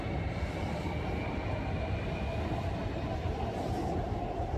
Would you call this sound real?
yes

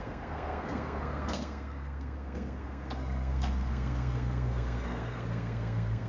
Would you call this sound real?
no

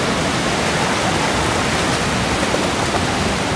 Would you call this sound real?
yes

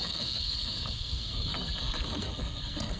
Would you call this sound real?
no